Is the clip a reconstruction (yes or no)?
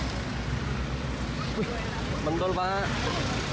no